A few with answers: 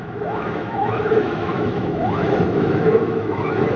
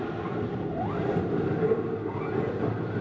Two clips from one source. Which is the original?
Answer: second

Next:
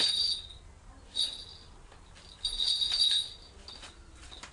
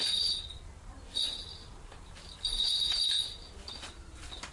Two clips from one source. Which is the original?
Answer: first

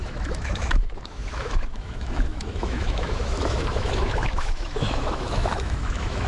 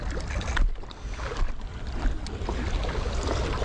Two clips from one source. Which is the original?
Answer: second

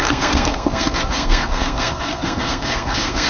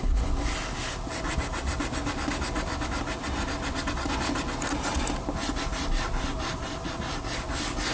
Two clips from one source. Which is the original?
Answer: second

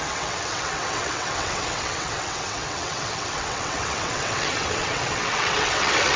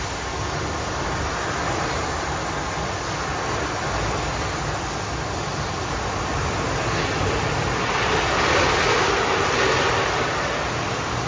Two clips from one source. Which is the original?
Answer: second